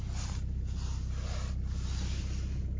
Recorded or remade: recorded